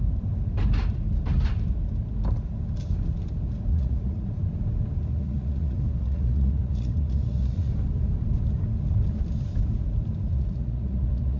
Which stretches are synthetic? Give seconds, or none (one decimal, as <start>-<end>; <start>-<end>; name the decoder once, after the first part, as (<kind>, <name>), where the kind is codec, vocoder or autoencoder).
3.7-4.3 (vocoder, Vocos); 5.1-7.7; 10.3-11.4